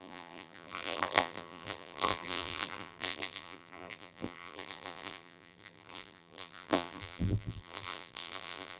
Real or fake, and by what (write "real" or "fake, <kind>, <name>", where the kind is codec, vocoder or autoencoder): fake, vocoder, BigVGAN v2